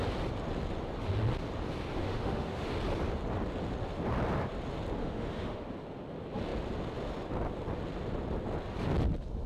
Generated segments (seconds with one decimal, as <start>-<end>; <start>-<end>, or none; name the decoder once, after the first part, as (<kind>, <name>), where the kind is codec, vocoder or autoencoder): 2.0-2.7 (autoencoder, DAC-VAE); 5.0-5.6